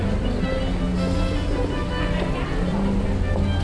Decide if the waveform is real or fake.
real